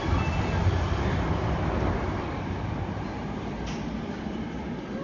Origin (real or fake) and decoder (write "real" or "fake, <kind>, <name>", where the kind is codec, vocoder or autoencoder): real